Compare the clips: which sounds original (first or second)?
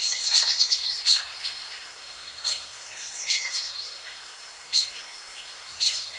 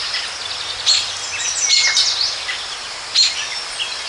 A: second